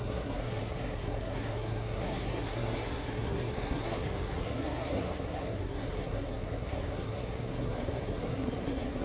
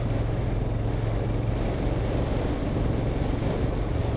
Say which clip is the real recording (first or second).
second